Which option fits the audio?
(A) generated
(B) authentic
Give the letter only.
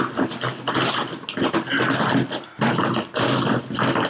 B